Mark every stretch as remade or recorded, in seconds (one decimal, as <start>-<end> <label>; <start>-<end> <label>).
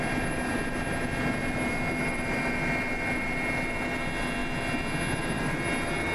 0.0-6.1 recorded